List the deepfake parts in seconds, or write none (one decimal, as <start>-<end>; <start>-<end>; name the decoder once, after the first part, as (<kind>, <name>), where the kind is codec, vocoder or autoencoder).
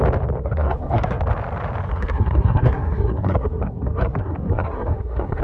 0.4-1.2 (codec, SNAC); 1.9-5.4